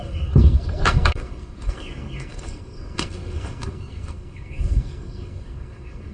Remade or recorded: remade